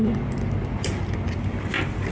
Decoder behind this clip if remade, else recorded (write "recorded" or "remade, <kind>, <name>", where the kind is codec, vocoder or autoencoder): recorded